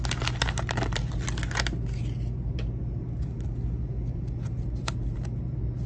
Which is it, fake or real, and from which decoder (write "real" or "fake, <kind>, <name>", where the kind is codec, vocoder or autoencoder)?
real